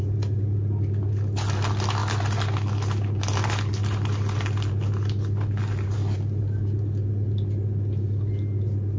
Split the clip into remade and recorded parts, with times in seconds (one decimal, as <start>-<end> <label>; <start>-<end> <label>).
0.0-9.0 recorded